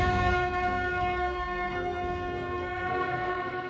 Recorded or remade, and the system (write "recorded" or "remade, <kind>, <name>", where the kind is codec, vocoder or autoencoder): remade, codec, SNAC